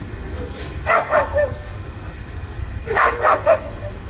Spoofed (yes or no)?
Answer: yes